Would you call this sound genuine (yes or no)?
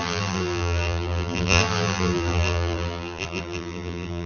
no